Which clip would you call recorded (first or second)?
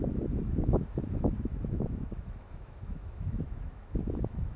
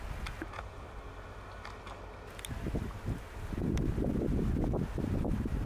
second